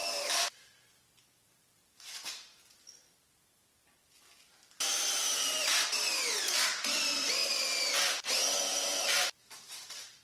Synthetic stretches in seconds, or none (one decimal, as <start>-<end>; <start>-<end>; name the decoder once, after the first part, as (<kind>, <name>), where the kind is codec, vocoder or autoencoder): 0.5-2.5 (vocoder, BigVGAN v2); 6.1-10.2